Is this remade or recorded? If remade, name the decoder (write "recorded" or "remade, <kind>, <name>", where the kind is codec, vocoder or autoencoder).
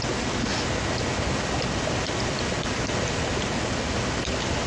recorded